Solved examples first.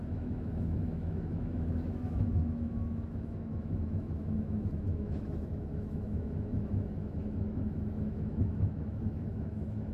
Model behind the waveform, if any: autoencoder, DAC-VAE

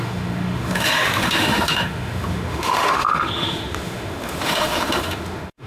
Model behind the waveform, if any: autoencoder, DAC-VAE